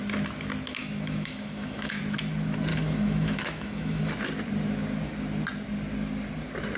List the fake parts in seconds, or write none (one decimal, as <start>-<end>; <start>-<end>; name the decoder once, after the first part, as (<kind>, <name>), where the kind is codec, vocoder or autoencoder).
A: 0.8-2.0 (autoencoder, DAC-VAE); 2.7-4.0